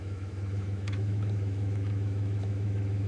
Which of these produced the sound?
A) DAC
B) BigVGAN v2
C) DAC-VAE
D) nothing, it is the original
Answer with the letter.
C